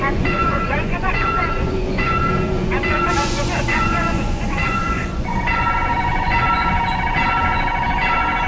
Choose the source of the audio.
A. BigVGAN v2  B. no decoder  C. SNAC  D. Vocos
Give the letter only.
D